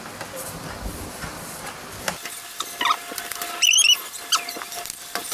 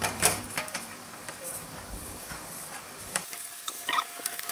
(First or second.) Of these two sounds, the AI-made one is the second